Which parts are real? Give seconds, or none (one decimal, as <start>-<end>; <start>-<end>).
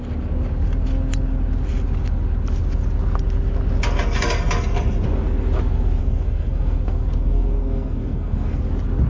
0.0-6.0; 8.6-9.1